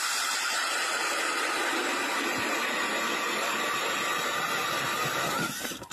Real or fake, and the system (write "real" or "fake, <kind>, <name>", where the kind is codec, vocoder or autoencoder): real